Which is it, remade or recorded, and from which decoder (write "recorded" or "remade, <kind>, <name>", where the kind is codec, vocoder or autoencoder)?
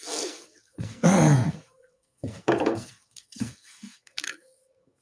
remade, codec, SNAC